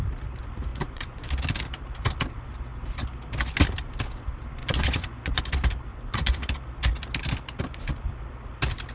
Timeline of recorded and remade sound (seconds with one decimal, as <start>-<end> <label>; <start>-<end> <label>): 0.0-0.7 recorded; 0.7-1.3 remade; 1.3-4.6 recorded; 4.6-5.4 remade; 5.4-5.9 recorded; 5.9-6.4 remade; 6.4-8.9 recorded